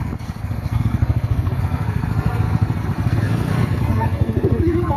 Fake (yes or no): yes